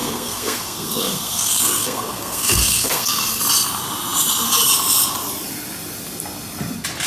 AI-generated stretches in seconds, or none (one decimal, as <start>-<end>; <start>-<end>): 0.0-3.4